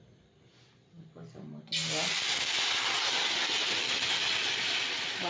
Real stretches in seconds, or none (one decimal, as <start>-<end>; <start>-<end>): 0.0-5.3